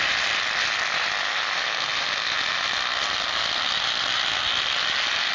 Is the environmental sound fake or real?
real